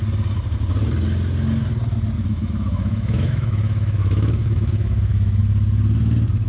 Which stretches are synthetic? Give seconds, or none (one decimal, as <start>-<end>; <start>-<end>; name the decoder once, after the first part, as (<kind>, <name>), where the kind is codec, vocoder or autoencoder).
2.3-5.4 (autoencoder, DAC-VAE)